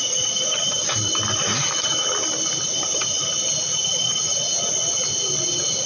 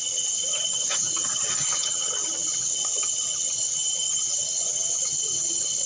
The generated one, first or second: second